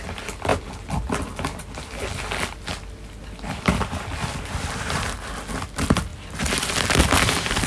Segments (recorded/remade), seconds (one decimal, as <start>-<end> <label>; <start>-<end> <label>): 0.0-7.7 recorded